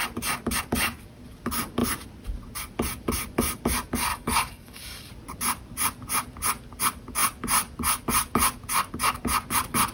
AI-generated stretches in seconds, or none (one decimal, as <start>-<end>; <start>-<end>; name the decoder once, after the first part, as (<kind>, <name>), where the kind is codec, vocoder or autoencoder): 4.1-5.1 (codec, DAC)

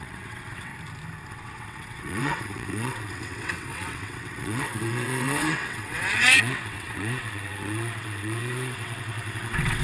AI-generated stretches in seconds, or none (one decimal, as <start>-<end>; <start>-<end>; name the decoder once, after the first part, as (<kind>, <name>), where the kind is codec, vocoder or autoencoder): 0.0-0.7 (vocoder, WaveNeXt); 1.3-9.8

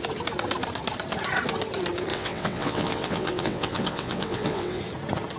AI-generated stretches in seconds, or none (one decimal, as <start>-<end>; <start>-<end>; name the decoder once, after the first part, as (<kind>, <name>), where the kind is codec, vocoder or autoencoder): 2.1-4.8 (vocoder, WaveNeXt)